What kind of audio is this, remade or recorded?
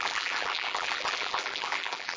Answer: remade